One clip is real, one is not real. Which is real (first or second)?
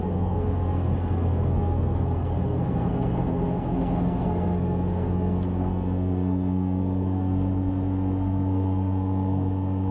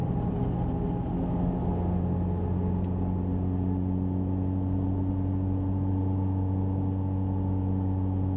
second